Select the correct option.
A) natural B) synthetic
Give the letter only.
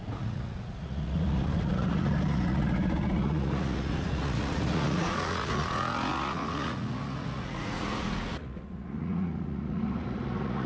B